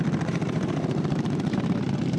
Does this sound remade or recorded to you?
remade